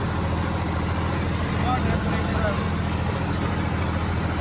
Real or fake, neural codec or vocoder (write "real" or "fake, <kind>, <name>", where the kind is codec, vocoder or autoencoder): real